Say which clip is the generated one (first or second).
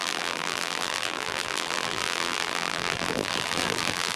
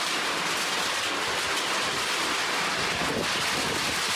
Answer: first